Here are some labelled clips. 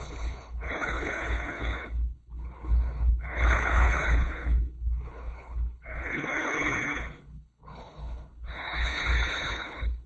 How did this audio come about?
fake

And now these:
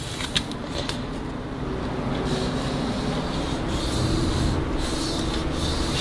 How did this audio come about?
real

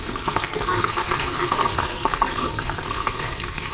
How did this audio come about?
fake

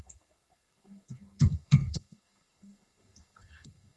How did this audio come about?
fake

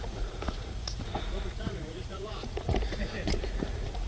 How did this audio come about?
fake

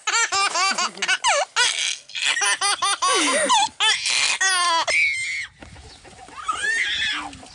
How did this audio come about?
real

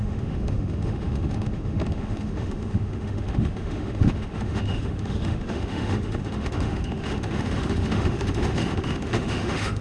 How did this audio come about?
fake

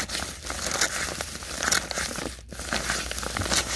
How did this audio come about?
real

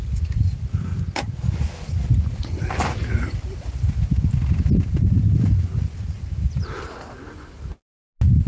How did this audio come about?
real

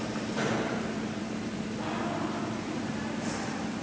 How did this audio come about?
real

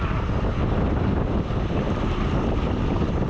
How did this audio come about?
real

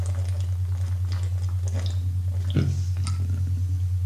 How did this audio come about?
real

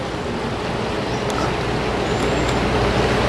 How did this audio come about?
real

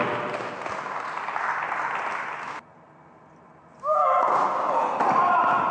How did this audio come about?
real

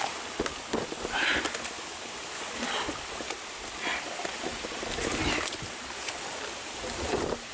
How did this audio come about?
real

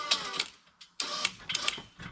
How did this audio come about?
real